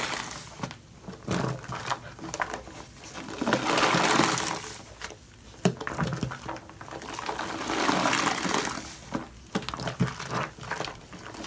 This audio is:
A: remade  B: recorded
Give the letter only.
B